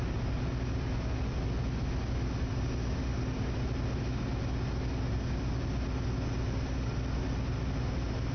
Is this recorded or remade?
recorded